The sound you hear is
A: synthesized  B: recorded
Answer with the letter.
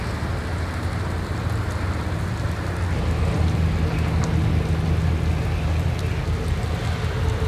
B